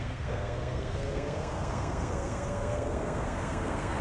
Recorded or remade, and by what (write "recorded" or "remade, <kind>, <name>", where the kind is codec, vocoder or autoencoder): remade, codec, SNAC